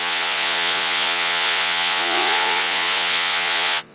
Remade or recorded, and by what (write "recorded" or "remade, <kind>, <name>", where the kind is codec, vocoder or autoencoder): remade, vocoder, Vocos